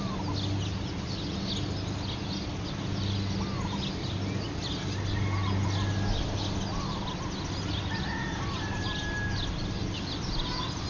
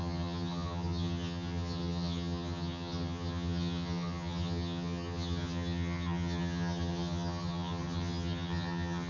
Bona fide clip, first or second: first